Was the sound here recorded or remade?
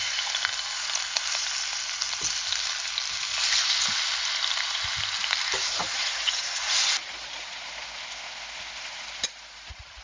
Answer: recorded